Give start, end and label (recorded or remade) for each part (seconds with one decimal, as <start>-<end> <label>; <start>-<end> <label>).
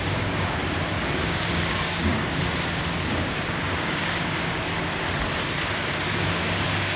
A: 0.0-0.6 remade; 0.6-1.2 recorded; 1.2-2.1 remade; 2.1-3.0 recorded; 3.0-4.7 remade; 4.7-6.0 recorded; 6.0-7.0 remade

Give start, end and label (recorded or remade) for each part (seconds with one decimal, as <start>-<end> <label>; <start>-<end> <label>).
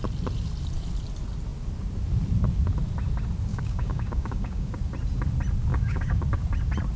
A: 0.0-3.5 recorded; 3.5-4.7 remade; 4.7-5.7 recorded; 5.7-6.2 remade; 6.2-7.0 recorded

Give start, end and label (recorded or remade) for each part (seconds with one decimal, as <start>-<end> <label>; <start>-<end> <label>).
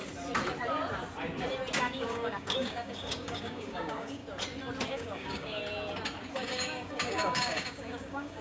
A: 0.0-1.8 recorded; 1.8-4.2 remade; 4.2-4.9 recorded; 4.9-5.6 remade; 5.6-6.3 recorded; 6.3-8.4 remade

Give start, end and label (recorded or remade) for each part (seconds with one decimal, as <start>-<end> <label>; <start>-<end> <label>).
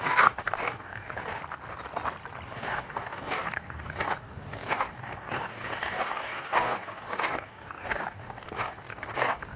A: 0.0-1.4 remade; 1.4-2.5 recorded; 2.5-9.6 remade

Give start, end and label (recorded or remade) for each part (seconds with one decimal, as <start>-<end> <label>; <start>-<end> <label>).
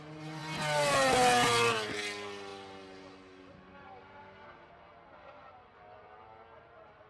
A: 0.0-7.1 recorded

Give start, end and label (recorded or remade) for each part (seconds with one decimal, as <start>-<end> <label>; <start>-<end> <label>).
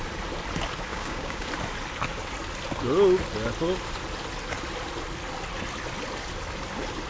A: 0.0-0.9 recorded; 0.9-1.5 remade; 1.5-7.1 recorded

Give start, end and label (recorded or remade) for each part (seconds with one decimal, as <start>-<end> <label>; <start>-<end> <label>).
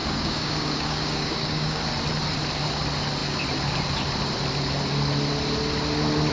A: 0.0-1.8 remade; 1.8-6.3 recorded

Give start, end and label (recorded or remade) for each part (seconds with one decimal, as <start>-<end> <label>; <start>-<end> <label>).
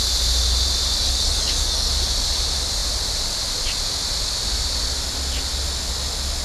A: 0.0-1.0 recorded; 1.0-1.9 remade; 1.9-6.4 recorded